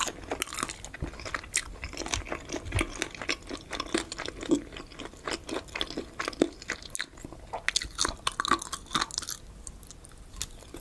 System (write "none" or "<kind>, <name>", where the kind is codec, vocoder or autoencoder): none